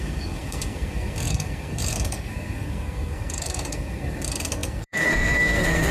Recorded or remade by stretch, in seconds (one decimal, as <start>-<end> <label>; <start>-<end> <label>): 0.0-5.9 remade

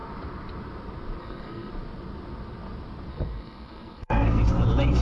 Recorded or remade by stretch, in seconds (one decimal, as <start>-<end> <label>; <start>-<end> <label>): 0.0-1.2 recorded; 1.2-1.7 remade; 1.7-3.1 recorded; 3.1-4.4 remade; 4.4-5.0 recorded

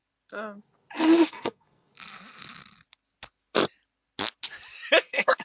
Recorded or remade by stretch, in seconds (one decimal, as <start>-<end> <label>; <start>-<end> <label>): 0.0-1.3 recorded; 1.3-1.9 remade; 1.9-5.0 recorded; 5.0-5.4 remade

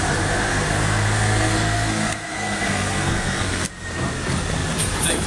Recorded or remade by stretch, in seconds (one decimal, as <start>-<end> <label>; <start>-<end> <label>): 0.0-0.5 recorded; 0.5-3.7 remade; 3.7-5.3 recorded

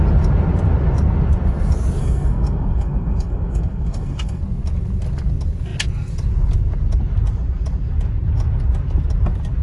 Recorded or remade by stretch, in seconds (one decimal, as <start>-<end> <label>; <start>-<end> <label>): 0.0-2.0 recorded; 2.0-4.4 remade; 4.4-9.6 recorded